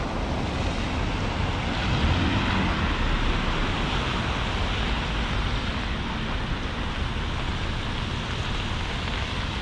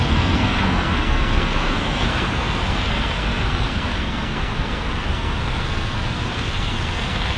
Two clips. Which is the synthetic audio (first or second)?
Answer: second